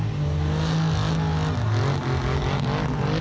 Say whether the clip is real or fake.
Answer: real